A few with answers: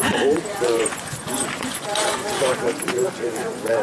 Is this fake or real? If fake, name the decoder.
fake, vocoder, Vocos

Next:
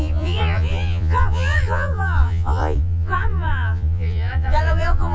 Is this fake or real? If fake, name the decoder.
fake, vocoder, Vocos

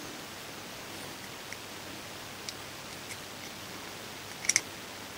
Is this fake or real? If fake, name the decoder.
real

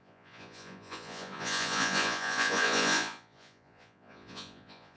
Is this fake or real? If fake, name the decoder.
fake, vocoder, Vocos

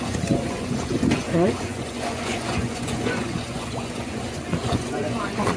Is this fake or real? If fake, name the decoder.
fake, vocoder, Vocos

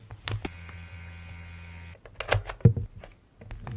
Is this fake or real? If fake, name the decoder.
real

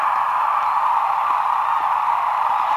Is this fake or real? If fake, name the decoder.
real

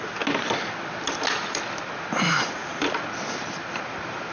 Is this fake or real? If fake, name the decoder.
real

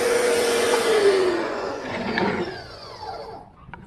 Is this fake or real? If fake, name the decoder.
fake, vocoder, Vocos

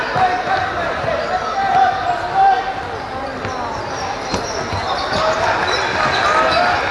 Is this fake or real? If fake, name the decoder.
real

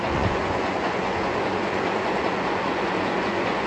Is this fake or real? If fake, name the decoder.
fake, vocoder, Vocos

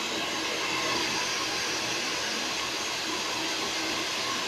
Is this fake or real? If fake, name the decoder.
real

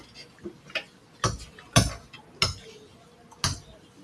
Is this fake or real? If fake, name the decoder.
real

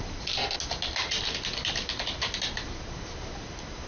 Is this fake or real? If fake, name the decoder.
real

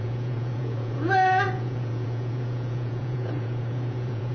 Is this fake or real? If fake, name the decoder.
fake, vocoder, Vocos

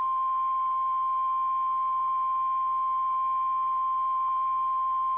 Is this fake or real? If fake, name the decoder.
real